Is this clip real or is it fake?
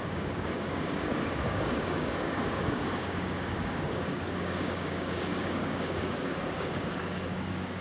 fake